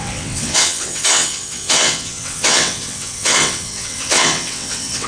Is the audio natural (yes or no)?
no